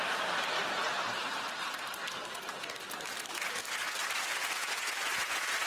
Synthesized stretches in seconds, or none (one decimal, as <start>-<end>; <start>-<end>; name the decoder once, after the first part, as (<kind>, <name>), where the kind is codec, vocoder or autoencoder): 4.6-5.7 (vocoder, Vocos)

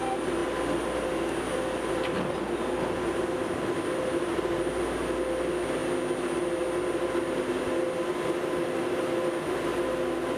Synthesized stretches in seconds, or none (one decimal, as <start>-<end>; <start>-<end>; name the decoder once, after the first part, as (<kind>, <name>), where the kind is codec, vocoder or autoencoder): none

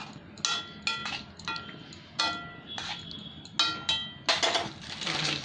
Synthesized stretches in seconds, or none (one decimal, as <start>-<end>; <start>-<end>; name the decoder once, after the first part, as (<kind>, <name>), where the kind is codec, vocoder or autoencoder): none

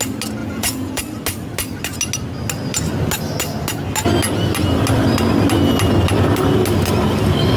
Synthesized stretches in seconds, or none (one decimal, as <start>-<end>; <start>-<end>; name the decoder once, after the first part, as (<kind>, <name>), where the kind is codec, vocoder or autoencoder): 0.4-1.0 (vocoder, Vocos)

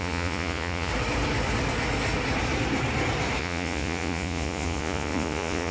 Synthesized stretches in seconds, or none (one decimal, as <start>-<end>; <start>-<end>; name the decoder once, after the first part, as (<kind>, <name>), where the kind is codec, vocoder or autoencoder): 0.0-0.9 (vocoder, Vocos); 3.4-5.7